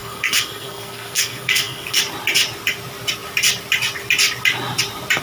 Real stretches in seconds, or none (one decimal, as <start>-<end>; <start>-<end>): 2.0-5.2